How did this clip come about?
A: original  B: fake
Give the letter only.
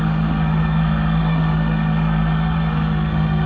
B